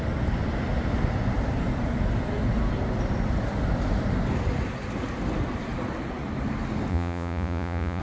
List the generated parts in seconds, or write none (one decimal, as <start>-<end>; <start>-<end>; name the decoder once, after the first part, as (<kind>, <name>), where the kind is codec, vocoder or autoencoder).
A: 6.9-8.0 (vocoder, Vocos)